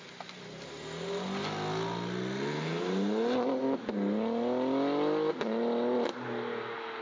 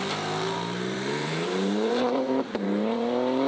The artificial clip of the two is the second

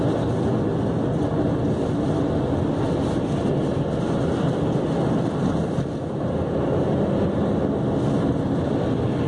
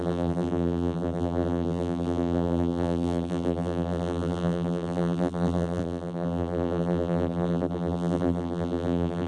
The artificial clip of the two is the second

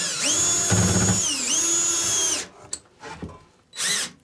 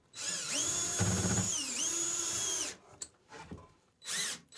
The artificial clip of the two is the second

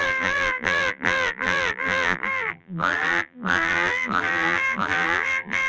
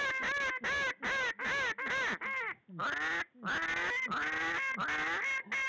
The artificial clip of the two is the first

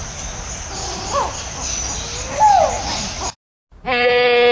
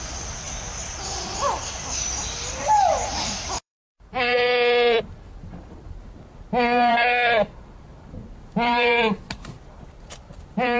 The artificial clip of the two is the second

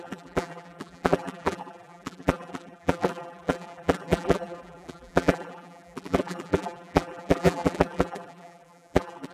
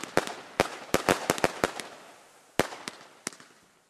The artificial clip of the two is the first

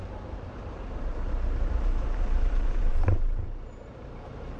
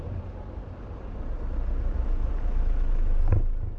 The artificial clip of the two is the first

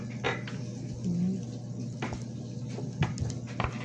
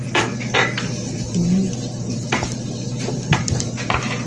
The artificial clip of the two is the second